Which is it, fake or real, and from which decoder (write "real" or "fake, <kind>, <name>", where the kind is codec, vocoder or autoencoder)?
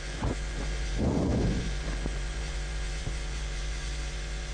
fake, vocoder, Vocos